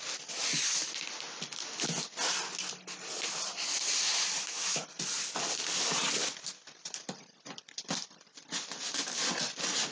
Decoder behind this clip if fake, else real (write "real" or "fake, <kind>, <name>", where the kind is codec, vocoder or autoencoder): real